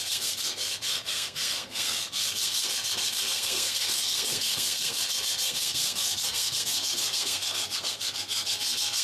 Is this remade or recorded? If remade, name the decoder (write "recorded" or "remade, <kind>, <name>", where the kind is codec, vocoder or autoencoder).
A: remade, codec, SNAC